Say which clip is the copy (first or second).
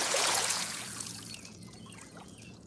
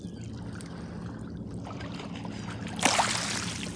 first